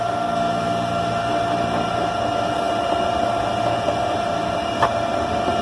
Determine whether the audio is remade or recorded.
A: recorded